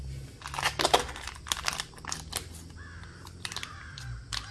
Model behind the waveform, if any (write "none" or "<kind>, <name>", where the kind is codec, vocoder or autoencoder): none